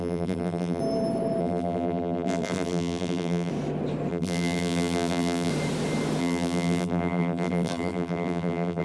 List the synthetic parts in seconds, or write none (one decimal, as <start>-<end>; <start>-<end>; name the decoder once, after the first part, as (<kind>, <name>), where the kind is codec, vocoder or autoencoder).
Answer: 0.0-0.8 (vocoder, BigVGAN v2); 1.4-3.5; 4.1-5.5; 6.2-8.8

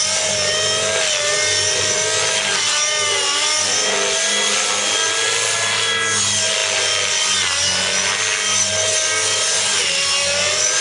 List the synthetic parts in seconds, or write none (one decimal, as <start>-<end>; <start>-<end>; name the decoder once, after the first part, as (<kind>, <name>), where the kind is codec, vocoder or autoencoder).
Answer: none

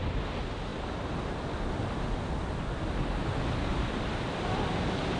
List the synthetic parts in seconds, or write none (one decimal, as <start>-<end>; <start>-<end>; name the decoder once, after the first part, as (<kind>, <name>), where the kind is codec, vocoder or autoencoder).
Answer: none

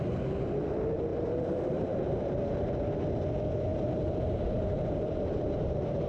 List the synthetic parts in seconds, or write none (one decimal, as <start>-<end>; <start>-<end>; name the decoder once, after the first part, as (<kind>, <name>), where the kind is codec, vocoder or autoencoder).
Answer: 1.1-2.4 (vocoder, BigVGAN v2); 3.7-6.1

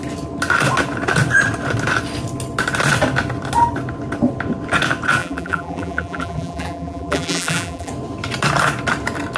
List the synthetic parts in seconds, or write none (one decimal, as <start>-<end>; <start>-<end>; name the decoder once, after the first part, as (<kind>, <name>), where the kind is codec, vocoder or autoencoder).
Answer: 5.2-7.9 (vocoder, BigVGAN v2)

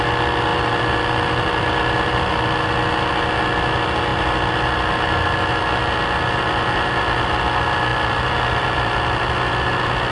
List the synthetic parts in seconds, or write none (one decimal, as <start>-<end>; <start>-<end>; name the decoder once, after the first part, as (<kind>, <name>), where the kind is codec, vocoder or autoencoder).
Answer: 0.5-2.3 (vocoder, BigVGAN v2); 7.9-9.7